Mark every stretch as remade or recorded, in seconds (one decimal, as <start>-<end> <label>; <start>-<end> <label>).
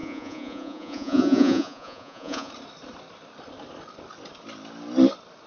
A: 0.0-2.5 remade; 2.5-5.5 recorded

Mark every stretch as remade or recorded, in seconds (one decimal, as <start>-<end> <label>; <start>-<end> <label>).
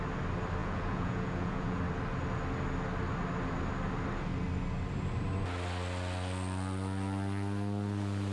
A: 0.0-0.6 recorded; 0.6-1.8 remade; 1.8-8.3 recorded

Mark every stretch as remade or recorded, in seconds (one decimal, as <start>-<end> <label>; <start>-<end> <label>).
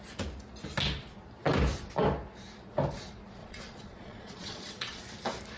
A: 0.0-3.4 recorded; 3.4-5.0 remade; 5.0-5.6 recorded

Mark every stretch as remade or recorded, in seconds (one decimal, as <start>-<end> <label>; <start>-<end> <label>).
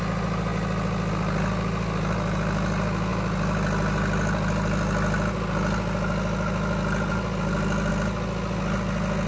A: 0.0-9.3 recorded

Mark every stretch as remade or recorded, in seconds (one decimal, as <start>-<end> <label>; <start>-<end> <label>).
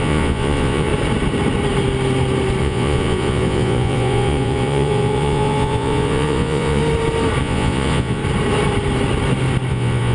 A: 0.0-0.9 remade; 0.9-2.6 recorded; 2.6-6.8 remade; 6.8-7.4 recorded; 7.4-8.2 remade; 8.2-9.7 recorded; 9.7-10.1 remade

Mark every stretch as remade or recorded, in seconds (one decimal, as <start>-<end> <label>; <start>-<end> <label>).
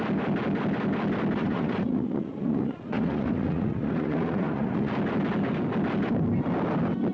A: 0.0-1.4 recorded; 1.4-4.9 remade; 4.9-7.1 recorded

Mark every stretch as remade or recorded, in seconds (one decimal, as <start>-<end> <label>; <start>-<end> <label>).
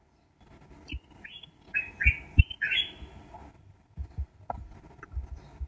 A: 0.0-5.7 recorded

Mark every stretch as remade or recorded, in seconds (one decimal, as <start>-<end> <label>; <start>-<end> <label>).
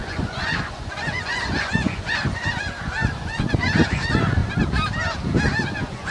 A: 0.0-4.4 remade; 4.4-5.6 recorded; 5.6-6.1 remade